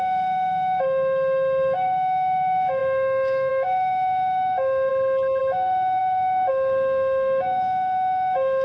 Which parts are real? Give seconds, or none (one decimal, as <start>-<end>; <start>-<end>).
4.9-5.4